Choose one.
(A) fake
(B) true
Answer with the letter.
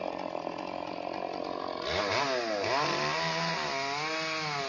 B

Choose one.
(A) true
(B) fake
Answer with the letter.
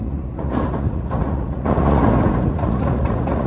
B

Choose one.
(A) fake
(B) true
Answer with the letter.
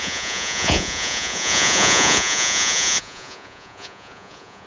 A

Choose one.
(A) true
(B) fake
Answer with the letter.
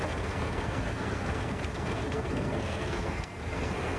B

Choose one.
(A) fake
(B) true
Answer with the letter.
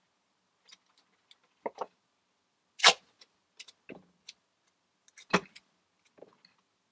B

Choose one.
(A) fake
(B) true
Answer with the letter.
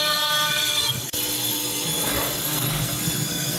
A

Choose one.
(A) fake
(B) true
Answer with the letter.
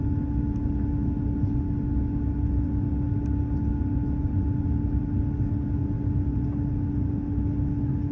B